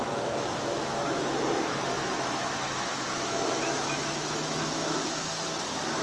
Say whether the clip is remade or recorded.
remade